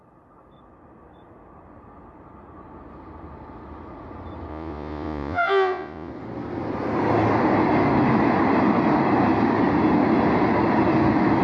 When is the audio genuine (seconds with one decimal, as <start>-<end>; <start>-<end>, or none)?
0.0-4.5; 6.1-11.4